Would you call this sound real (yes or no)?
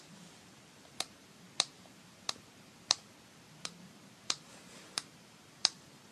no